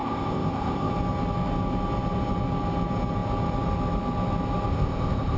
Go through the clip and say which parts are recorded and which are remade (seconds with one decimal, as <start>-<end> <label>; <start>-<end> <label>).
0.0-0.9 remade; 0.9-4.7 recorded; 4.7-5.4 remade